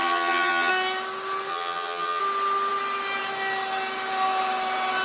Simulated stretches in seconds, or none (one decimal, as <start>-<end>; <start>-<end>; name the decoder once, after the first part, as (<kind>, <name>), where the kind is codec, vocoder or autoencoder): 0.0-0.7 (vocoder, HiFi-GAN); 1.5-2.2